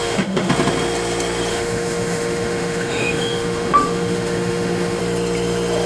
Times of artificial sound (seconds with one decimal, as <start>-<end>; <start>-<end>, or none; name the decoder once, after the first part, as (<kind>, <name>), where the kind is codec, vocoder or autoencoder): 0.0-0.5 (autoencoder, DAC-VAE); 1.5-5.0